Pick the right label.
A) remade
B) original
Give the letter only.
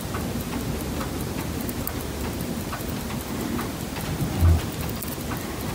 B